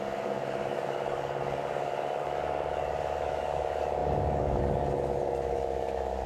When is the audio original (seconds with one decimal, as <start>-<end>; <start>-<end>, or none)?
none